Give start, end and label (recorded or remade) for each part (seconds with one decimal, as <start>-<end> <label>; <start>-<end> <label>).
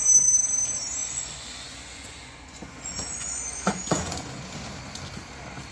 0.0-1.0 recorded; 1.0-4.4 remade; 4.4-5.7 recorded